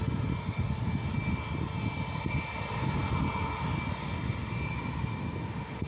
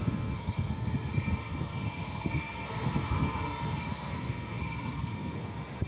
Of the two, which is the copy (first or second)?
second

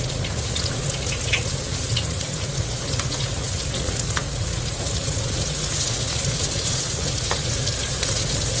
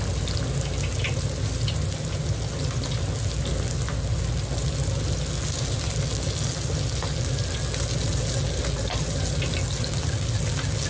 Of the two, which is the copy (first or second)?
first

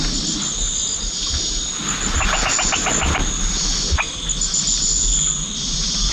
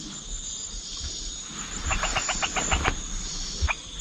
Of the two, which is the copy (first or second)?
second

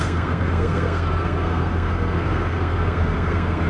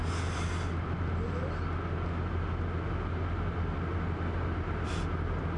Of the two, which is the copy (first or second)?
first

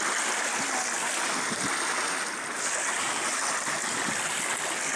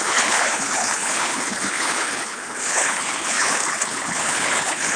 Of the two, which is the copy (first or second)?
second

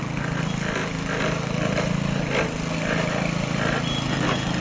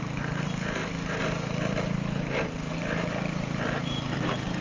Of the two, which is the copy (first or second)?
second